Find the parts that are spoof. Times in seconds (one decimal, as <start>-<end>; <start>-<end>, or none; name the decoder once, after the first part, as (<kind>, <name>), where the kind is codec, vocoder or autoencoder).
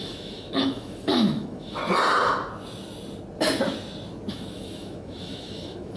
0.0-1.8 (autoencoder, DAC-VAE); 4.3-6.0